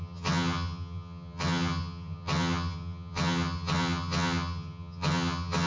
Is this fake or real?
fake